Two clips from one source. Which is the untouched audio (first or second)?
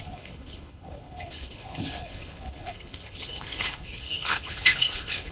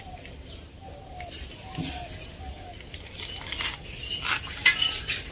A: second